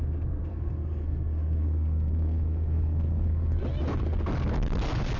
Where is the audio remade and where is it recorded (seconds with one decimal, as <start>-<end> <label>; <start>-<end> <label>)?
0.0-0.5 recorded; 0.5-3.6 remade; 3.6-5.2 recorded